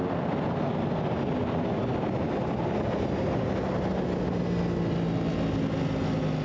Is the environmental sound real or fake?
real